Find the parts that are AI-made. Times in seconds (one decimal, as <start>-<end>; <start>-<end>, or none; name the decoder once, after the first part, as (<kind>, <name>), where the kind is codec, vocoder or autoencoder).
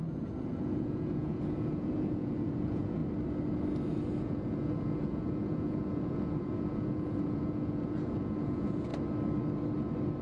0.0-3.0 (vocoder, Vocos); 4.2-8.9